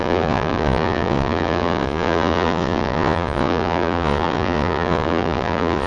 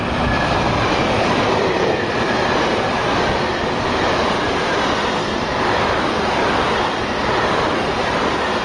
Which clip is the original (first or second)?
second